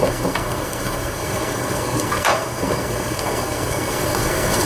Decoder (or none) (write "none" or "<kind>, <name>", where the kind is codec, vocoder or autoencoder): codec, SNAC